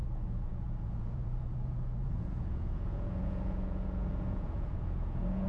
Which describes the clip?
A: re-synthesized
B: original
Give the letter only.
A